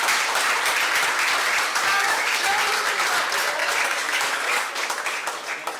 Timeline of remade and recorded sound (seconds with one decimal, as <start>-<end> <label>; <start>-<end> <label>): 0.0-1.7 recorded; 1.7-2.5 remade; 2.5-3.6 recorded; 3.6-4.7 remade; 4.7-5.8 recorded